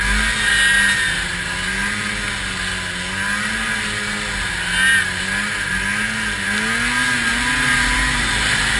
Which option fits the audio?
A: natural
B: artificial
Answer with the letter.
A